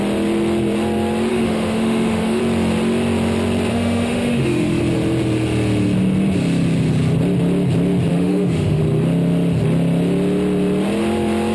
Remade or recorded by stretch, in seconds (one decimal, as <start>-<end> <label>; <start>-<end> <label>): 0.0-1.3 recorded; 1.3-2.4 remade; 2.4-3.7 recorded; 3.7-4.8 remade; 4.8-8.1 recorded; 8.1-8.8 remade; 8.8-11.5 recorded